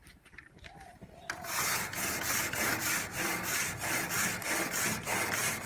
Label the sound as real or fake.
real